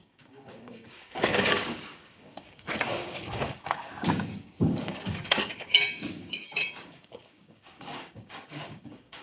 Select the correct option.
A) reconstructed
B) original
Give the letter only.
A